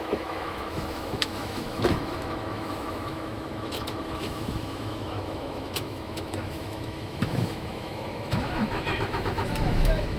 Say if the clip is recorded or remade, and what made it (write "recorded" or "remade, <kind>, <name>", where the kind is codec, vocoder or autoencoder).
remade, autoencoder, DAC-VAE